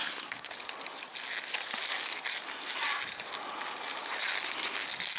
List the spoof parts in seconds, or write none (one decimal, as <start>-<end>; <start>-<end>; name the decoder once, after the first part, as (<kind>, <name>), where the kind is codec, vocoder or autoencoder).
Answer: 0.0-0.5 (codec, SNAC)